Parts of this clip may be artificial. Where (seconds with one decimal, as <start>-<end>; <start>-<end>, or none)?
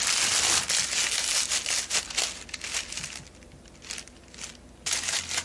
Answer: none